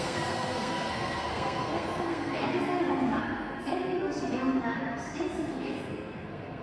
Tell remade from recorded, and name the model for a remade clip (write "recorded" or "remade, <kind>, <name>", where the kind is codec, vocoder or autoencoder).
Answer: remade, codec, SNAC